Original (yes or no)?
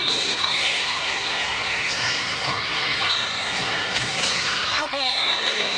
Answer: no